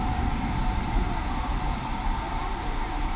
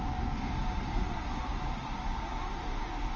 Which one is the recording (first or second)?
second